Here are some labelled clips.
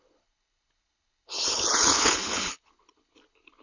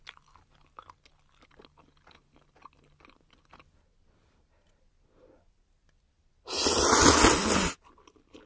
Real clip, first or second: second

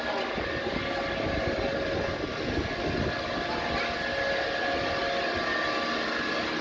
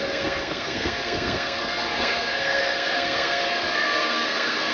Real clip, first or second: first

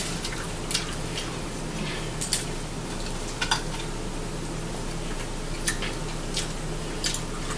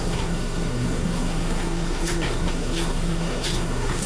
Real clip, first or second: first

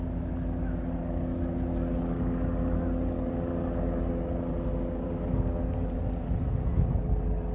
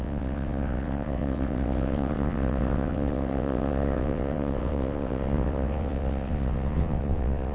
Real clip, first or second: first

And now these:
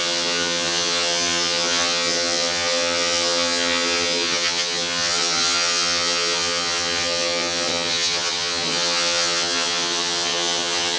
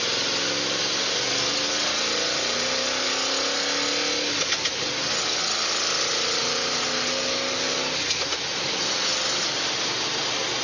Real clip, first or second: second